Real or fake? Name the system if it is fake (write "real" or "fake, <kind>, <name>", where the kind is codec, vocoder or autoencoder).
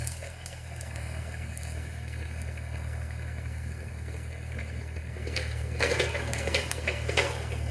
fake, codec, SNAC